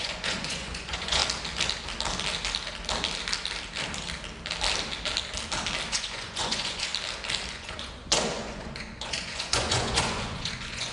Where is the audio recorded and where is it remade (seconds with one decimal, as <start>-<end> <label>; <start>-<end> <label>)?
0.0-1.2 remade; 1.2-5.9 recorded; 5.9-6.9 remade; 6.9-7.5 recorded; 7.5-10.9 remade